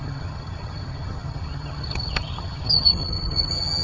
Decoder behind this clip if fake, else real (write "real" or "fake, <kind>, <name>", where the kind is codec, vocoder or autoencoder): fake, vocoder, HiFi-GAN